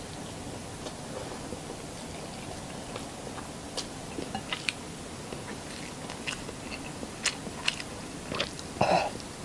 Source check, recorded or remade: recorded